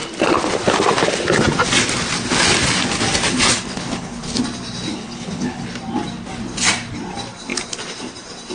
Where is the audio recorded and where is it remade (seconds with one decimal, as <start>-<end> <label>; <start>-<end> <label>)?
0.0-3.7 recorded; 3.7-4.4 remade; 4.4-4.9 recorded; 4.9-5.7 remade; 5.7-8.5 recorded

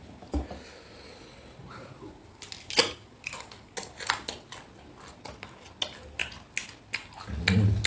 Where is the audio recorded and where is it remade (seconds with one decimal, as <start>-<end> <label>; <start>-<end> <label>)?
0.0-7.9 recorded

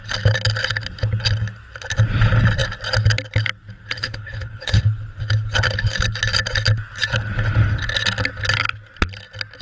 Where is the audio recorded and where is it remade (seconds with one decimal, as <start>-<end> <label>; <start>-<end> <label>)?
0.0-4.0 recorded; 4.0-4.8 remade; 4.8-9.6 recorded

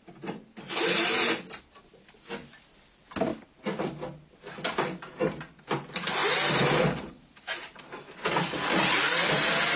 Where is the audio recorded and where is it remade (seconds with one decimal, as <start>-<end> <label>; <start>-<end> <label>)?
0.0-9.8 recorded

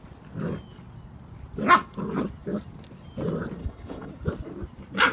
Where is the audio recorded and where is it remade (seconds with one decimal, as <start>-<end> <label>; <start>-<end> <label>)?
0.0-3.6 recorded; 3.6-4.1 remade; 4.1-5.1 recorded

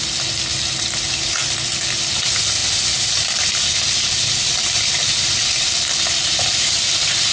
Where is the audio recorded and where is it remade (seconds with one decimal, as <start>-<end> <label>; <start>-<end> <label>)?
0.0-7.3 recorded

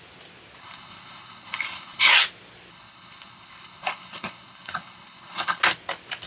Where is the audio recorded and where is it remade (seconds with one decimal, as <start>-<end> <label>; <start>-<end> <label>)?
0.0-0.6 recorded; 0.6-2.1 remade; 2.1-2.7 recorded; 2.7-5.6 remade; 5.6-6.3 recorded